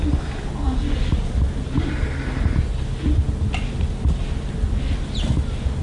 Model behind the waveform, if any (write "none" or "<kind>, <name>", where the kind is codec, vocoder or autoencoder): none